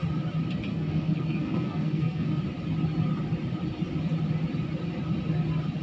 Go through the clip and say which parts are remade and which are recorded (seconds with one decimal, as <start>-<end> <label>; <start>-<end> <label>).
0.0-0.7 recorded; 0.7-2.4 remade; 2.4-5.8 recorded